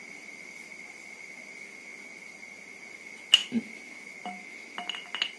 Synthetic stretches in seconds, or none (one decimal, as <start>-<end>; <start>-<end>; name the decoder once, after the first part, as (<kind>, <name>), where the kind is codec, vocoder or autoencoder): none